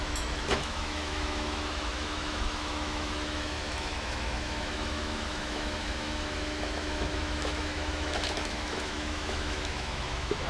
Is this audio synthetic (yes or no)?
yes